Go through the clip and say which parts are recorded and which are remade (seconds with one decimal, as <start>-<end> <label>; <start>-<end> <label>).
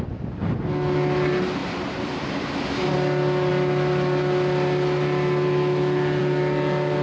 0.0-1.6 recorded; 1.6-2.4 remade; 2.4-7.0 recorded